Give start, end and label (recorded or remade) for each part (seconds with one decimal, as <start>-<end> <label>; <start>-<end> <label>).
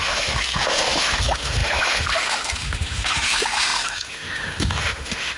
0.0-5.4 remade